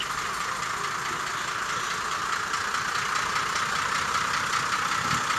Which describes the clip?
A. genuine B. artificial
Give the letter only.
A